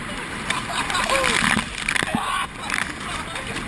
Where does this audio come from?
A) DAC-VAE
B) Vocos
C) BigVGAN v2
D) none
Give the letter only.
D